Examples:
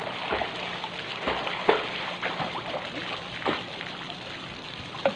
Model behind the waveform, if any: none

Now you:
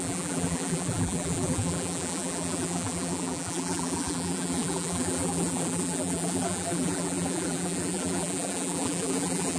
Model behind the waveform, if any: vocoder, BigVGAN v2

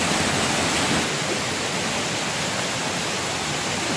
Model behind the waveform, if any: none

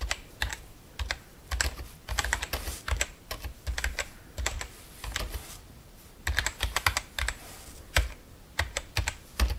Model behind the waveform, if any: vocoder, BigVGAN v2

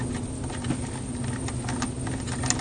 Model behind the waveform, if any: none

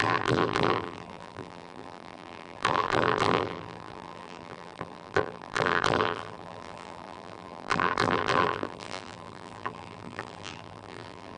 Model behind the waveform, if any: vocoder, BigVGAN v2